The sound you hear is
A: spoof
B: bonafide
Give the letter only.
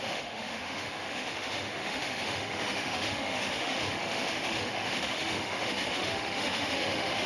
A